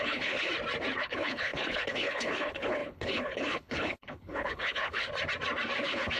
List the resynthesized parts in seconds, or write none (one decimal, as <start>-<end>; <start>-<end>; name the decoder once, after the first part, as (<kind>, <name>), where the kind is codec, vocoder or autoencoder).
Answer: 0.0-0.5 (codec, HILCodec); 1.0-5.1; 5.8-6.2